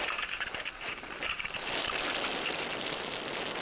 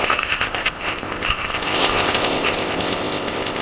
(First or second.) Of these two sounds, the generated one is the second